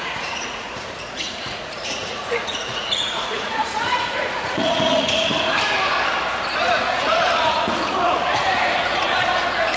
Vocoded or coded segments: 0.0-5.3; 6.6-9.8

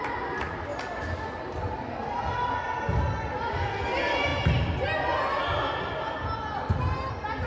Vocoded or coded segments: none

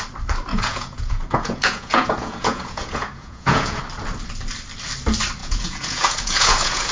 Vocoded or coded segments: 0.5-3.8; 5.4-6.9

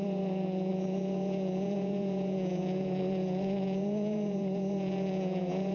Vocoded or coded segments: 0.0-5.7

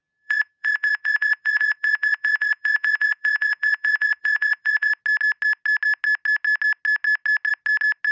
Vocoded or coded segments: 0.0-4.9

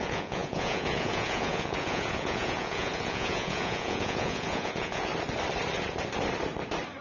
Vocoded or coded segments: 0.0-5.1

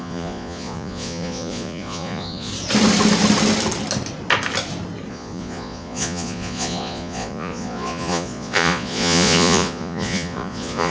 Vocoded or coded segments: 0.0-2.5; 5.1-10.9

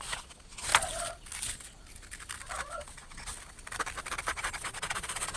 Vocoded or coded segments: 0.0-0.7; 2.7-3.3; 4.3-5.4